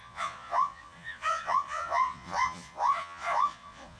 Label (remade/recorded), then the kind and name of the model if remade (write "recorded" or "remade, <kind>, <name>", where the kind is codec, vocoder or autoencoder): remade, vocoder, Vocos